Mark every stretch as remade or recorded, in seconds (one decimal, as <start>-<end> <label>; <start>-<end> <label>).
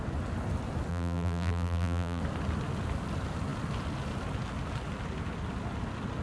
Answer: 0.0-0.9 recorded; 0.9-2.2 remade; 2.2-6.2 recorded